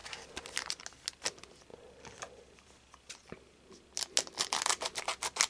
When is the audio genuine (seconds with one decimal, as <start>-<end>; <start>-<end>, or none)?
0.0-5.5